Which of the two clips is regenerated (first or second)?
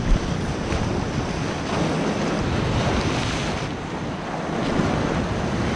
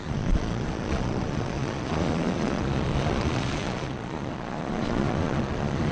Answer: second